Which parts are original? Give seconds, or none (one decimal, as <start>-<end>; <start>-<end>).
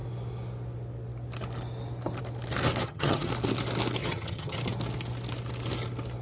0.0-2.8; 3.3-4.0; 4.6-6.2